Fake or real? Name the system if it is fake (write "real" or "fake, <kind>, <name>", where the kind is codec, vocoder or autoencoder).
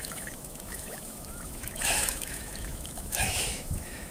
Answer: fake, autoencoder, DAC-VAE